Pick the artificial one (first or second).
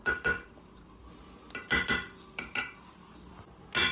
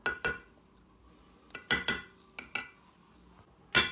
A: first